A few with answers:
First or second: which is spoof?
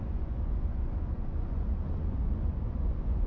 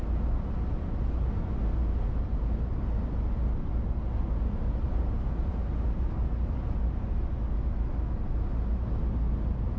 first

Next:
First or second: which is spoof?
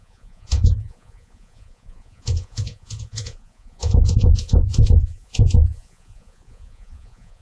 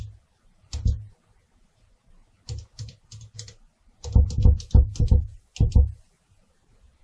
first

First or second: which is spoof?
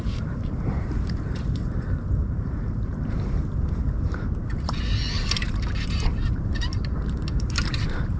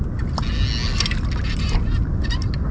first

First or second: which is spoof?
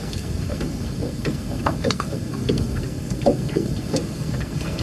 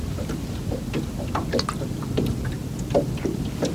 first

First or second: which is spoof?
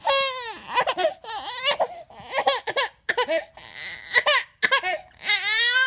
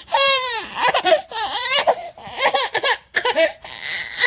second